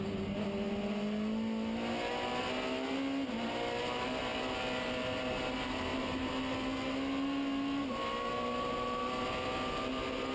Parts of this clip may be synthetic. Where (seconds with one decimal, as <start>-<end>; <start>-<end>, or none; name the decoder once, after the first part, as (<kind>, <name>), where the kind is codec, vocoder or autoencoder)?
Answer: none